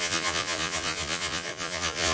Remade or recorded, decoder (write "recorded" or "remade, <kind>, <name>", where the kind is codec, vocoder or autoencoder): remade, vocoder, Vocos